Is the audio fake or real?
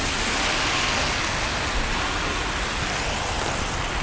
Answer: real